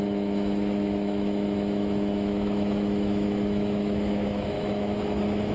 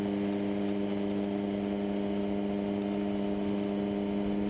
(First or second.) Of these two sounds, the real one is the second